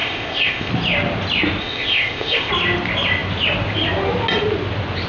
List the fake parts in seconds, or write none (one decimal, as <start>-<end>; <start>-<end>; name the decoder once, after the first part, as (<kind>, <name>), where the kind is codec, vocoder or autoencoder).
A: 0.0-0.7 (codec, ZipCodec); 1.6-2.5